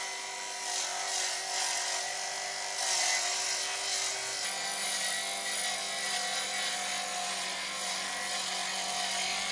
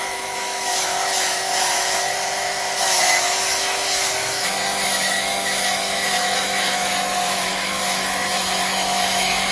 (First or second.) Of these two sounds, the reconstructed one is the second